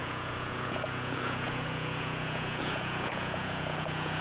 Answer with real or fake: fake